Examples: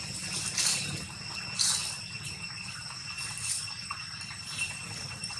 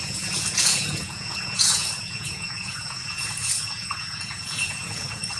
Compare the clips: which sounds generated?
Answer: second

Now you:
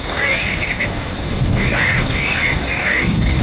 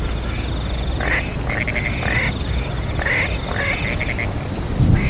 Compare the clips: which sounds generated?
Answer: first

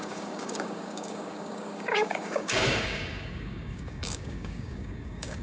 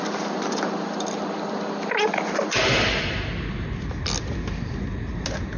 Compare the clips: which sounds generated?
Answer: first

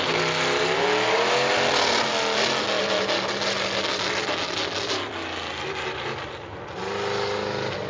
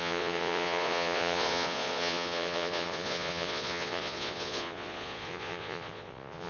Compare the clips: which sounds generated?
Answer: second